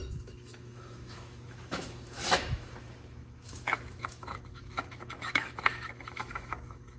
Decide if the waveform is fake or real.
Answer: fake